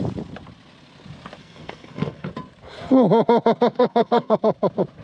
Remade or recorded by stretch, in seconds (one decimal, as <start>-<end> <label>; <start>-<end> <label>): 0.0-1.4 recorded; 1.4-2.3 remade; 2.3-3.7 recorded; 3.7-4.4 remade; 4.4-5.0 recorded